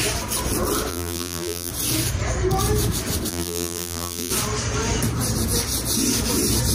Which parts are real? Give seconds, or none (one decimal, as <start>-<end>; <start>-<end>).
0.0-0.9; 1.7-3.3; 4.3-6.7